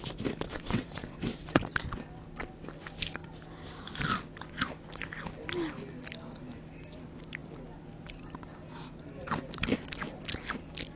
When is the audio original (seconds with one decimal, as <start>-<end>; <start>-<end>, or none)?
0.0-0.5; 1.6-11.0